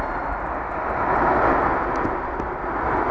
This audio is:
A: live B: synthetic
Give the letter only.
A